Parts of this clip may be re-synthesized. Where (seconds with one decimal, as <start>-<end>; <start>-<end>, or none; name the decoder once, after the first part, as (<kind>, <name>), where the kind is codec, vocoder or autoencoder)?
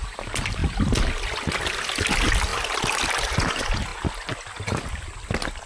none